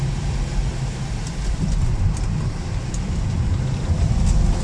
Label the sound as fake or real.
real